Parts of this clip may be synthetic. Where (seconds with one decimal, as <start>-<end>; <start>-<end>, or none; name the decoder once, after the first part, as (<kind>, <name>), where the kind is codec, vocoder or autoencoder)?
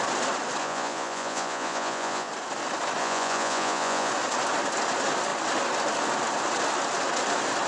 0.6-2.3 (vocoder, Vocos); 3.0-4.1